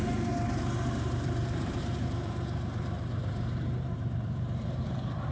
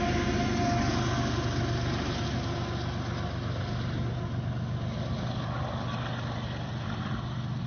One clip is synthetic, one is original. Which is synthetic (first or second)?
first